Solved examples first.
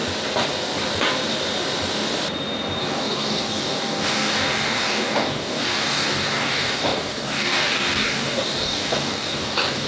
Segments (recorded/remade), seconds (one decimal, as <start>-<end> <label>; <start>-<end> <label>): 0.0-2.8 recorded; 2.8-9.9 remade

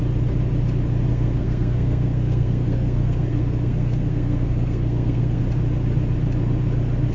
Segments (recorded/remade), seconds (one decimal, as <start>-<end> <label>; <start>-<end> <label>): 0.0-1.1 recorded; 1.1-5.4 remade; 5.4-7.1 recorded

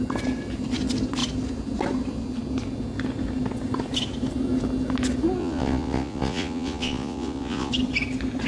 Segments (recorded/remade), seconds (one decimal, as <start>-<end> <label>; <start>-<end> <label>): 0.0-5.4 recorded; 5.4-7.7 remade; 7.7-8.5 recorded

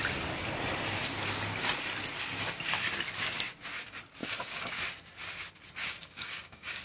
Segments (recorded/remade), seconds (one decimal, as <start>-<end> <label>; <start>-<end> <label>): 0.0-4.2 recorded; 4.2-4.7 remade; 4.7-5.8 recorded; 5.8-6.8 remade

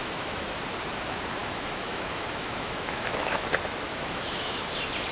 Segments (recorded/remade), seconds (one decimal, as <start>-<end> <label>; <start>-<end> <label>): 0.0-0.5 remade; 0.5-1.4 recorded; 1.4-3.5 remade; 3.5-3.9 recorded; 3.9-4.5 remade; 4.5-5.1 recorded